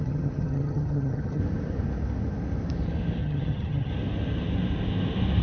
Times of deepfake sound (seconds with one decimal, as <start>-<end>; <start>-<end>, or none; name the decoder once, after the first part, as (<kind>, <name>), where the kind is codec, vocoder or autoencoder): 0.0-1.4 (vocoder, HiFi-GAN); 3.2-3.9